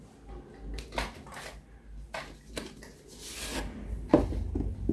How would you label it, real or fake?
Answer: real